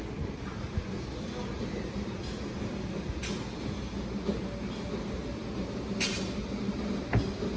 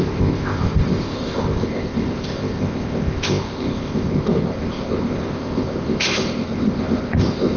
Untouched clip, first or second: first